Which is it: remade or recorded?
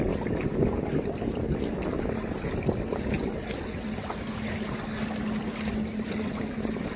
recorded